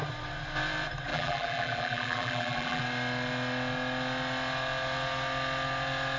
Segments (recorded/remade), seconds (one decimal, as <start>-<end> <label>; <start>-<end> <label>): 0.0-1.1 recorded; 1.1-2.8 remade; 2.8-6.2 recorded